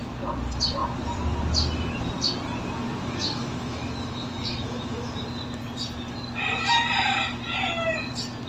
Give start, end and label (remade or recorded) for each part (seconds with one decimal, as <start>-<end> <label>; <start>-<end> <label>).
0.0-3.0 recorded; 3.0-5.1 remade; 5.1-8.5 recorded